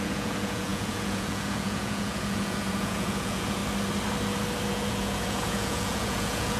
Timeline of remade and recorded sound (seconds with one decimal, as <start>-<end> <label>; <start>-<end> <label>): 0.0-3.6 remade; 3.6-4.7 recorded; 4.7-6.6 remade